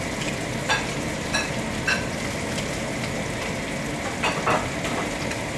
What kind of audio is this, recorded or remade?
remade